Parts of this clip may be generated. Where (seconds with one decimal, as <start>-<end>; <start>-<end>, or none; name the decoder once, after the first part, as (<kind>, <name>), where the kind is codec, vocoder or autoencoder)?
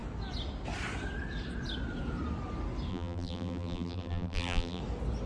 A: 2.9-4.8 (vocoder, BigVGAN v2)